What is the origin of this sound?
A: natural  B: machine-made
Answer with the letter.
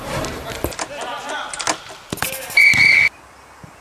A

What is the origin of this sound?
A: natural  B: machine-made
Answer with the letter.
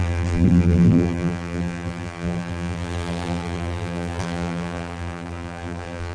B